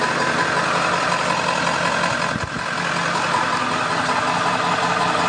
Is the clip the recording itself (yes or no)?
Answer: yes